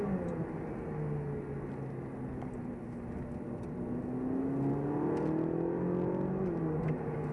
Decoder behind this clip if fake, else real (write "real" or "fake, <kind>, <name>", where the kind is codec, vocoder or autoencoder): real